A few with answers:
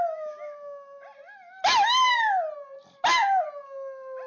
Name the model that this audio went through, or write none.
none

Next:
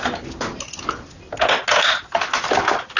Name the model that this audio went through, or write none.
none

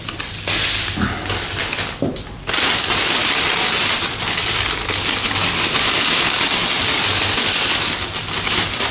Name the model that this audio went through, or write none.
none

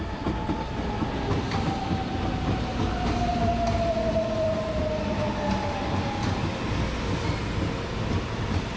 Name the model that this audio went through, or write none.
none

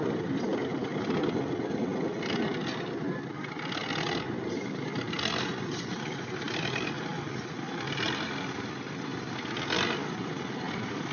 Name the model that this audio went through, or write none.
none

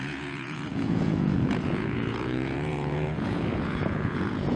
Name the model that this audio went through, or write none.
vocoder, Vocos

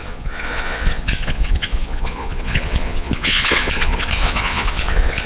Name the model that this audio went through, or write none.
vocoder, Vocos